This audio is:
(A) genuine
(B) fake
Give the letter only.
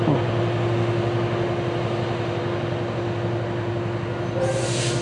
A